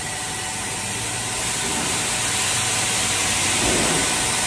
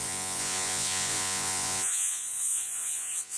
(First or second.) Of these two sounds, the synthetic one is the second